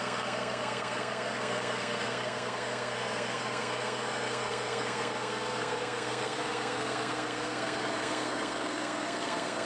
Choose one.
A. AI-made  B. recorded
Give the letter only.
A